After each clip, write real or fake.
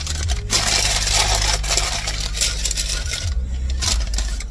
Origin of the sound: real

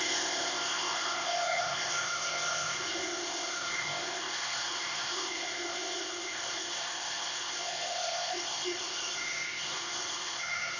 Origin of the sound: fake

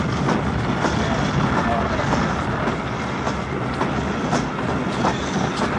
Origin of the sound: real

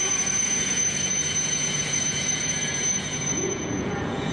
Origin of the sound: fake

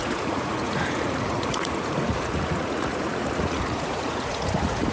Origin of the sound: fake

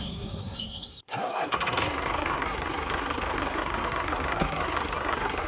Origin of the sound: fake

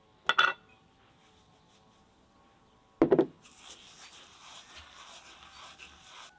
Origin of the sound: real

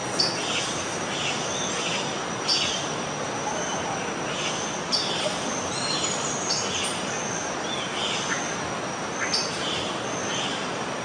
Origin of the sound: real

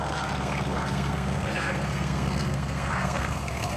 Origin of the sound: fake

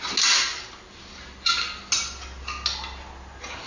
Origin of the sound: real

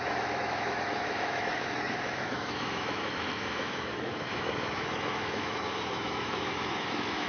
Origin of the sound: fake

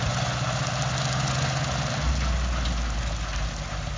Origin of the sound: real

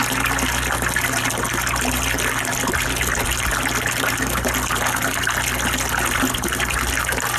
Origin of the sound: real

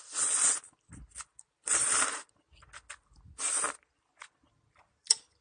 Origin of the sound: fake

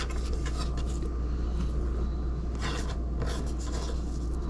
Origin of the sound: real